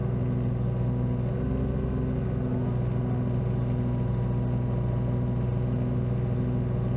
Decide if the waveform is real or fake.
real